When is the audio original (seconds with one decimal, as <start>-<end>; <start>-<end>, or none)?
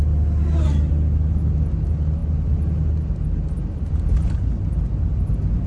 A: 0.0-5.7